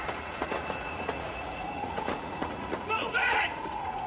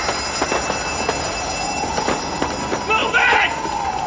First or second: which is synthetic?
first